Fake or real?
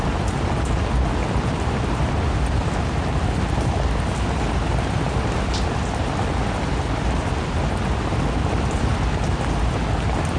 real